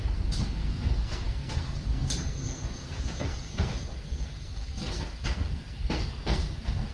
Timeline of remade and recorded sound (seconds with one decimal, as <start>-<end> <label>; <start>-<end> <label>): 0.0-6.9 remade